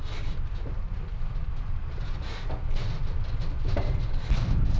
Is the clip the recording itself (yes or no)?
yes